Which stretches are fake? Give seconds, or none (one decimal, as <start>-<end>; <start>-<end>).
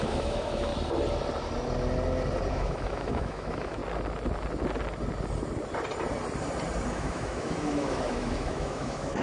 0.0-0.7; 2.5-3.8; 6.9-9.2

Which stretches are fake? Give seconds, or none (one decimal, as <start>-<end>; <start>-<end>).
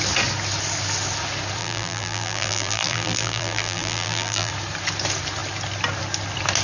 1.6-4.5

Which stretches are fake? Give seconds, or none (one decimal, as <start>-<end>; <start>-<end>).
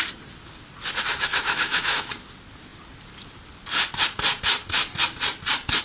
1.3-2.1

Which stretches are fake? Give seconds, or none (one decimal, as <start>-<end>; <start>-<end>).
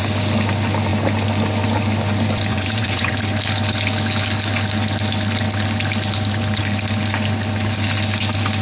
2.5-3.1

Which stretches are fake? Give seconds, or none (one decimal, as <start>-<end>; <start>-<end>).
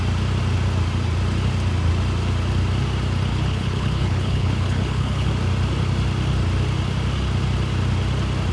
3.3-5.3